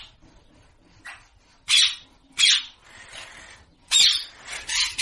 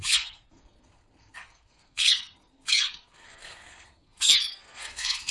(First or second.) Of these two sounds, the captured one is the first